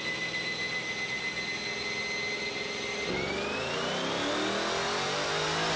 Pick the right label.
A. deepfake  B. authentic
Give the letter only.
B